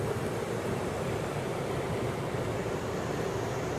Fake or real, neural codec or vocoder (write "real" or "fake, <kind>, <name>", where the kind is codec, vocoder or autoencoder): fake, vocoder, BigVGAN v2